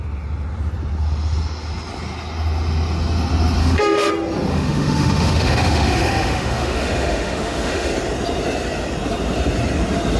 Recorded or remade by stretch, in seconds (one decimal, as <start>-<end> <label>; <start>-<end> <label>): 0.0-3.6 recorded; 3.6-4.1 remade; 4.1-4.5 recorded; 4.5-7.9 remade; 7.9-10.2 recorded